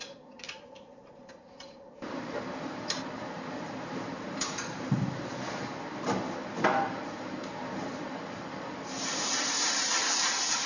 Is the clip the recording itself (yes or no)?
no